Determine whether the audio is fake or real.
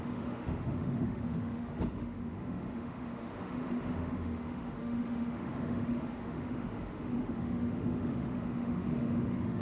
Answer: fake